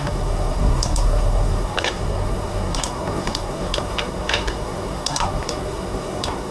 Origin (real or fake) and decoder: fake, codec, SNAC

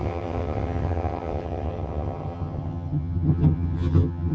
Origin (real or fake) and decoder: fake, vocoder, HiFi-GAN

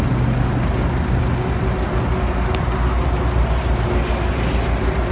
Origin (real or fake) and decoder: real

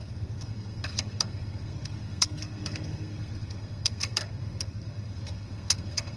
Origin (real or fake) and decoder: fake, codec, SNAC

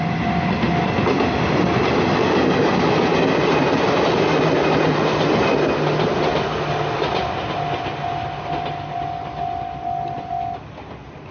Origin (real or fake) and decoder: real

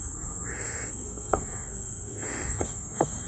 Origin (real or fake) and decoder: fake, codec, SNAC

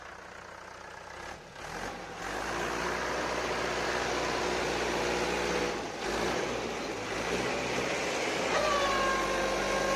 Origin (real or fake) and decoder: real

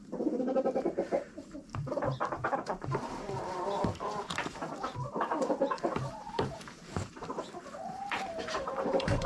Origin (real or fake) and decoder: fake, vocoder, BigVGAN v2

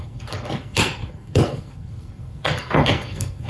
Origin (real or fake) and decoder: fake, codec, SNAC